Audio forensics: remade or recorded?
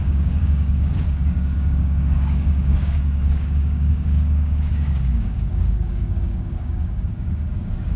remade